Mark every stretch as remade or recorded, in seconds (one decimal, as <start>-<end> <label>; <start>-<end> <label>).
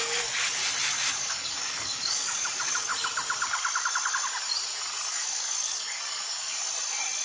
0.0-0.6 remade; 0.6-1.1 recorded; 1.1-2.9 remade; 2.9-5.1 recorded; 5.1-6.6 remade; 6.6-7.2 recorded